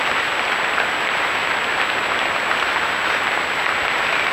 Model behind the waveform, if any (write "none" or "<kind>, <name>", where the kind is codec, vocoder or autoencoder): none